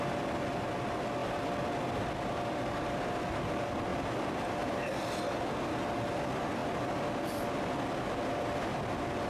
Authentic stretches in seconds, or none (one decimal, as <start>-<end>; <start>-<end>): 0.0-1.2; 1.7-3.9; 4.6-6.6; 7.5-9.3